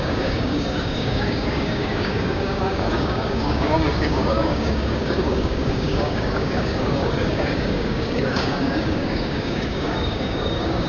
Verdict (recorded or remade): remade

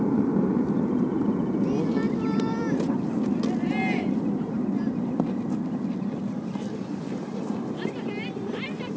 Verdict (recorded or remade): recorded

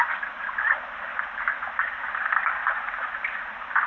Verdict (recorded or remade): recorded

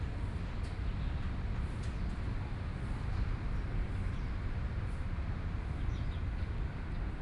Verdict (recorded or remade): recorded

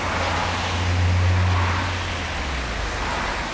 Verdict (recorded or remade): recorded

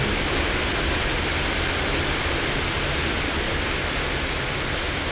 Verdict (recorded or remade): recorded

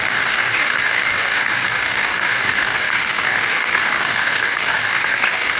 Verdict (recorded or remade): remade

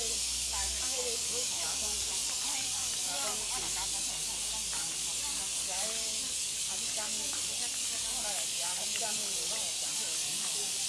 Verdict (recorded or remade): remade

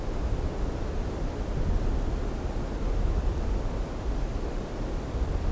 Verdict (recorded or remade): recorded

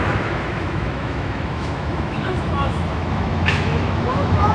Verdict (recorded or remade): remade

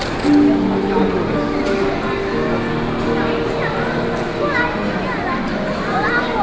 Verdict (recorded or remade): recorded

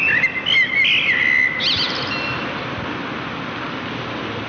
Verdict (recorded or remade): recorded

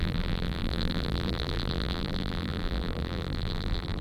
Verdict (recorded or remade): remade